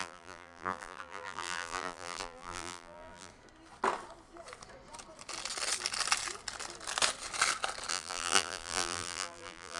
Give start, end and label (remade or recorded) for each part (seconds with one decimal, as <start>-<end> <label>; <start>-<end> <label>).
0.0-3.3 remade; 3.3-7.9 recorded; 7.9-9.8 remade